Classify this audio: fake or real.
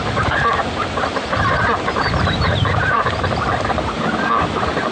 fake